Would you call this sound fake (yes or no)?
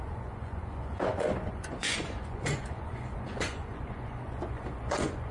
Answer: yes